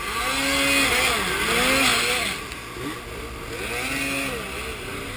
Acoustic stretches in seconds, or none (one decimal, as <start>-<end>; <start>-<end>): 0.0-5.2